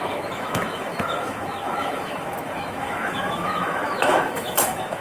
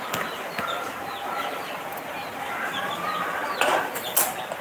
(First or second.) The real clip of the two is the second